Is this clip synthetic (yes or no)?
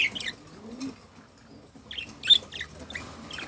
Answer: no